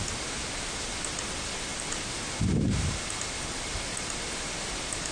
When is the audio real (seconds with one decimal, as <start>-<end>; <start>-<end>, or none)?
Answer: 0.0-1.7; 2.2-5.1